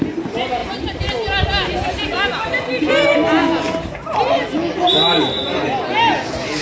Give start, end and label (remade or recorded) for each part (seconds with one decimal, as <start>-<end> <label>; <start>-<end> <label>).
0.0-6.6 recorded